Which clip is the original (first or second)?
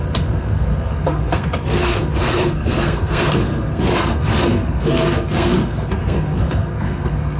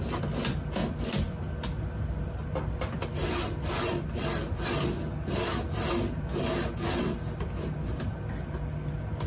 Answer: second